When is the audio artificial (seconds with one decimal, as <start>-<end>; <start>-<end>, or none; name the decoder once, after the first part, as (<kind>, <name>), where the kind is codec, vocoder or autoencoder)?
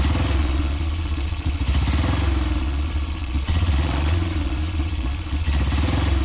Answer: 0.4-1.6 (vocoder, Vocos); 2.6-5.6